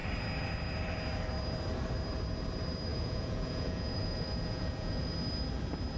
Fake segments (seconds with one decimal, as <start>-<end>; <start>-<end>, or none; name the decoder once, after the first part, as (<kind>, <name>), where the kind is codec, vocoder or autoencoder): 2.9-5.1 (vocoder, Vocos)